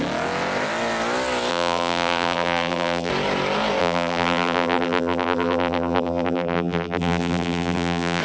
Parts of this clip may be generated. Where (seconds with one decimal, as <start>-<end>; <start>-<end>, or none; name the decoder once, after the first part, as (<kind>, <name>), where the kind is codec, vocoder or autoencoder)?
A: 1.5-3.1 (vocoder, BigVGAN v2); 3.8-8.2